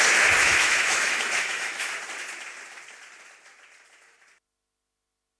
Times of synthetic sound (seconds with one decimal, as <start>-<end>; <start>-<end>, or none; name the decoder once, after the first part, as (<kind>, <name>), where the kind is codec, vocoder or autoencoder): 0.4-1.9 (autoencoder, DAC-VAE)